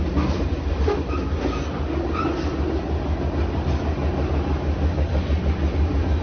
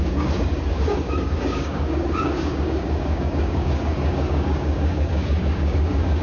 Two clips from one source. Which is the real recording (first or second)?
first